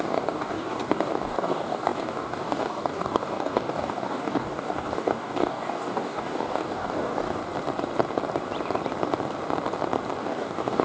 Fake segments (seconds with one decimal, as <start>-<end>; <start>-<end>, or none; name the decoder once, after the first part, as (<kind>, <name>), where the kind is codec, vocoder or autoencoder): 0.0-7.4 (codec, DAC); 10.2-10.8